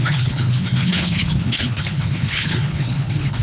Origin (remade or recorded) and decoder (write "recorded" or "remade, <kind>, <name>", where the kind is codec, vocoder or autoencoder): remade, codec, HILCodec